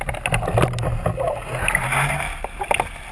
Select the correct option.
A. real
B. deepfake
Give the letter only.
A